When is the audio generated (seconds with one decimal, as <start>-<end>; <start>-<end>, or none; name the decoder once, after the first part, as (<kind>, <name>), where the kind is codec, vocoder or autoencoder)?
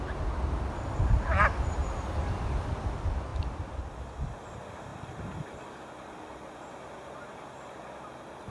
3.3-3.8 (vocoder, BigVGAN v2); 4.9-8.5